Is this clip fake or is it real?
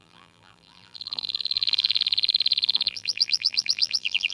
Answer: fake